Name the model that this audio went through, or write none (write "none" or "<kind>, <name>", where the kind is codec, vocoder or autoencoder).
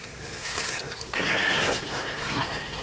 codec, SNAC